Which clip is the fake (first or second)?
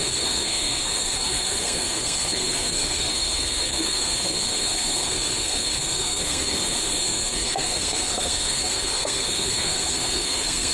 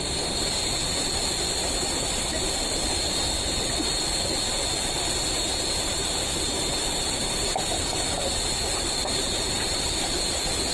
first